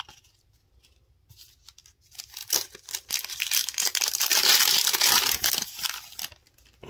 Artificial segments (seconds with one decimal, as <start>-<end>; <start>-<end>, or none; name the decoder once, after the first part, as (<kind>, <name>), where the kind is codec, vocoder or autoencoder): 3.6-5.9 (vocoder, BigVGAN v2)